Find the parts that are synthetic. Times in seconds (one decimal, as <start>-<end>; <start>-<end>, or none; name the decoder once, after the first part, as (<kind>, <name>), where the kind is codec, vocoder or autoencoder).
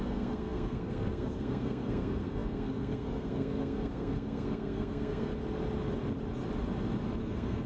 0.0-5.3 (codec, SNAC); 7.2-7.7